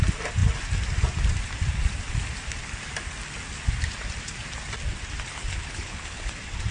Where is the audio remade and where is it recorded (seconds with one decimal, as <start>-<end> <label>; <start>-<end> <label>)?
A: 0.0-5.3 recorded; 5.3-6.3 remade; 6.3-6.7 recorded